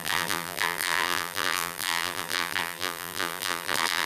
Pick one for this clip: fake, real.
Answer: fake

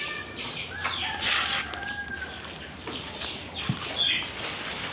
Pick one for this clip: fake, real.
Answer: real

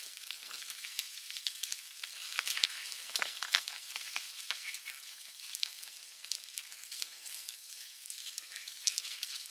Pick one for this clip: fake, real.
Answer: fake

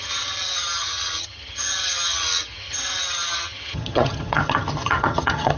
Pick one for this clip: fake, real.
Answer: fake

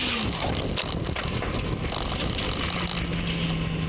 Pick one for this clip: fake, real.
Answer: real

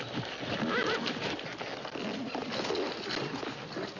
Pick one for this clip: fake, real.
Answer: real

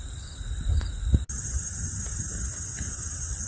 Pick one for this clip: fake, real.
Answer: real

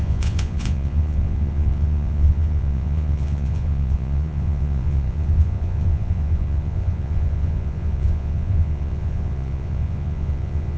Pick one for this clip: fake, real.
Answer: fake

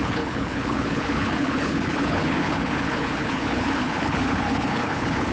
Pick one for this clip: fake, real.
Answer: fake